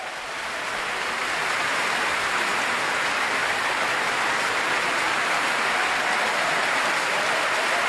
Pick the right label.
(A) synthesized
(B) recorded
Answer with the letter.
B